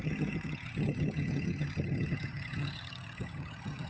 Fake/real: fake